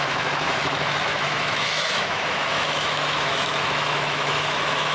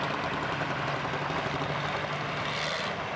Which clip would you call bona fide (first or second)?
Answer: second